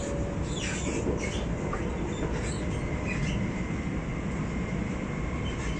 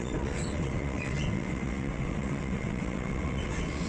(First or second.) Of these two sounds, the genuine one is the first